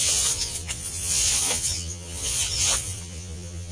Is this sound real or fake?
fake